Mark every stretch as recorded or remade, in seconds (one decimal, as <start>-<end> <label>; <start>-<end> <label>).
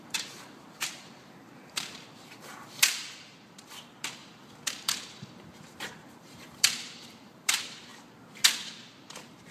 0.0-7.9 remade; 7.9-9.0 recorded; 9.0-9.5 remade